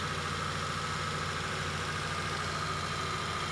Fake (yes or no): no